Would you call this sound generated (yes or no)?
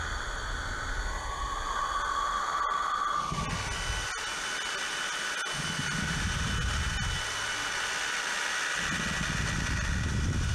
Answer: no